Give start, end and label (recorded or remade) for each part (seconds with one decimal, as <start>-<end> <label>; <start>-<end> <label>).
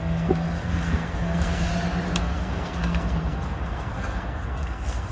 0.0-1.7 remade; 1.7-2.2 recorded; 2.2-5.1 remade